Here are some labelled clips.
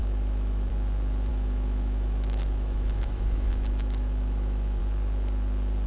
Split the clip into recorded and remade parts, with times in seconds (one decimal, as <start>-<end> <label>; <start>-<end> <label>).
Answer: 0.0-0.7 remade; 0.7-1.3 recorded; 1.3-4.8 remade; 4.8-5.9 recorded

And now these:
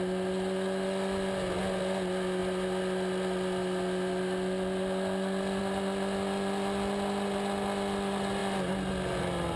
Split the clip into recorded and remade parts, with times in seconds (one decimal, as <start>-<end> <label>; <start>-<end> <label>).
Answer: 0.0-9.6 recorded

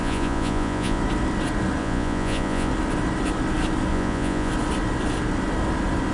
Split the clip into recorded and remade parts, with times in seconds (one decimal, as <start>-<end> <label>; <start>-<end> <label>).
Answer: 0.0-1.0 remade; 1.0-1.8 recorded; 1.8-2.7 remade; 2.7-3.9 recorded; 3.9-4.5 remade; 4.5-6.1 recorded

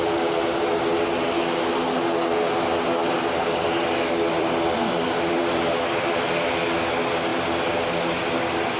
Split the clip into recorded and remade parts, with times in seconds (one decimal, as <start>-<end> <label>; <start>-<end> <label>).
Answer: 0.0-3.0 recorded; 3.0-6.5 remade; 6.5-7.3 recorded; 7.3-8.3 remade; 8.3-8.8 recorded